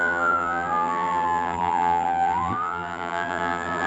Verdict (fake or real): fake